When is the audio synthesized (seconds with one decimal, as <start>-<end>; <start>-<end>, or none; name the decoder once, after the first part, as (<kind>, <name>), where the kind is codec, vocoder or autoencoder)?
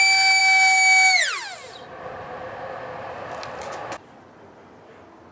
none